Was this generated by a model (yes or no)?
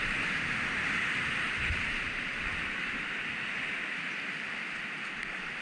no